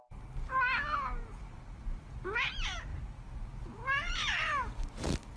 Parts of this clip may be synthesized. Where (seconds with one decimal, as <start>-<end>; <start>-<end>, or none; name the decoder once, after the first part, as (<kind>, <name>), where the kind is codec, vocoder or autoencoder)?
2.9-3.6 (vocoder, BigVGAN v2)